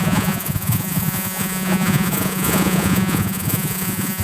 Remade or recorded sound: remade